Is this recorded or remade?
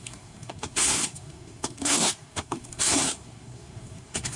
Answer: remade